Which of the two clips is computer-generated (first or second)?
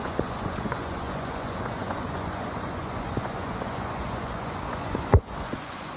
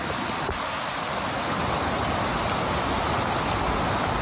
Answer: first